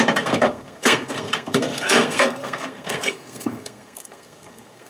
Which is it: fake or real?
fake